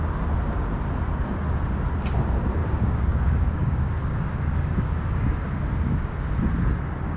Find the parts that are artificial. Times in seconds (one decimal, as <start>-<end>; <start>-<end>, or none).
2.6-6.3